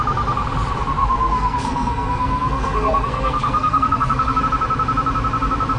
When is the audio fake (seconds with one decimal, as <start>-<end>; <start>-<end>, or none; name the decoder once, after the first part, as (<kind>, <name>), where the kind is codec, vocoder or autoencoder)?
1.0-4.4 (codec, SNAC)